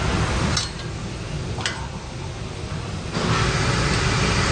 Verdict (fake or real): real